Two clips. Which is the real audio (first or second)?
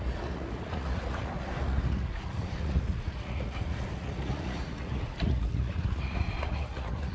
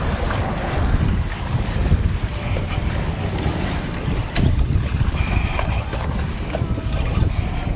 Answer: second